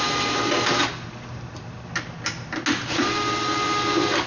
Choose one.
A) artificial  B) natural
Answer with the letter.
B